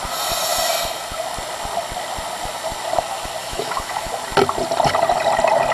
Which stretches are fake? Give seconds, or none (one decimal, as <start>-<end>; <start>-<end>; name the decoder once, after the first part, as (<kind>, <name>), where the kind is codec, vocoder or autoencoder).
3.4-4.1 (autoencoder, DAC-VAE)